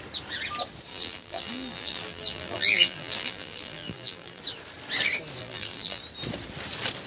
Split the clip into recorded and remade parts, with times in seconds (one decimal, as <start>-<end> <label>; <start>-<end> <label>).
0.0-0.9 recorded; 0.9-4.4 remade; 4.4-5.4 recorded; 5.4-6.0 remade; 6.0-7.1 recorded